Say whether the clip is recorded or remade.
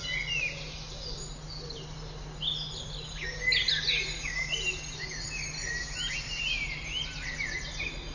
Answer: recorded